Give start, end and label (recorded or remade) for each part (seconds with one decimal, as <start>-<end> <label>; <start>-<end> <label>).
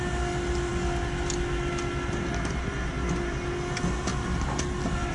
0.0-5.1 recorded